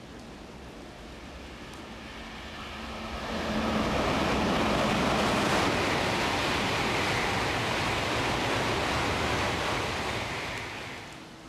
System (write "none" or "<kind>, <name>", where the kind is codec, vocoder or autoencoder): none